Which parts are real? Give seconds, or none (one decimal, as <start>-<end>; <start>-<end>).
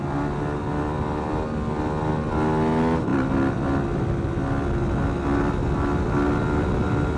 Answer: 0.0-7.2